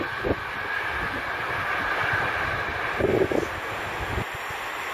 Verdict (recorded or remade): recorded